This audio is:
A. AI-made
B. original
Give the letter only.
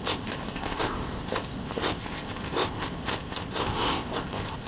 A